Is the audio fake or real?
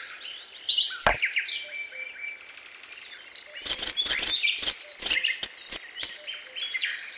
real